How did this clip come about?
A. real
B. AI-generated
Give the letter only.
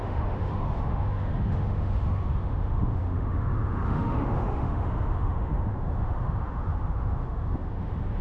B